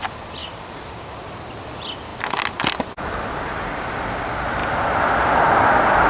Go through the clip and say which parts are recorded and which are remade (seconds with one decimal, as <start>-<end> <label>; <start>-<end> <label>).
0.0-0.4 recorded; 0.4-1.6 remade; 1.6-6.1 recorded